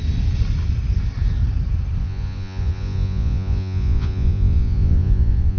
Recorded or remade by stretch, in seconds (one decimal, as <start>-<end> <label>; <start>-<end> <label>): 0.0-2.0 recorded; 2.0-5.6 remade